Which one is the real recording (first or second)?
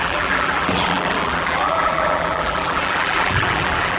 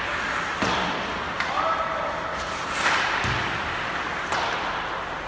second